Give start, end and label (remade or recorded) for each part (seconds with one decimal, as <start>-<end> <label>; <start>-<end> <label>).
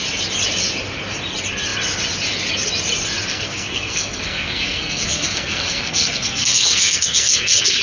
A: 0.0-3.3 recorded; 3.3-7.8 remade